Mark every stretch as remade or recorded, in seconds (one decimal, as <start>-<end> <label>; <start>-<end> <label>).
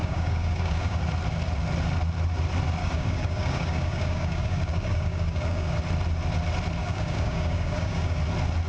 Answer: 0.0-1.0 remade; 1.0-2.8 recorded; 2.8-5.8 remade; 5.8-6.8 recorded; 6.8-8.2 remade; 8.2-8.7 recorded